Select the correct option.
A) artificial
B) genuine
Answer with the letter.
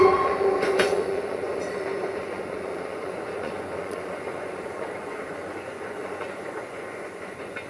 A